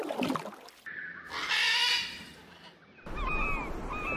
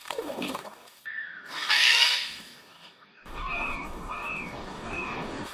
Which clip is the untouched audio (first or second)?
first